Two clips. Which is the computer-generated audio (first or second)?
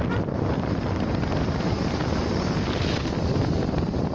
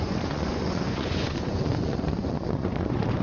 second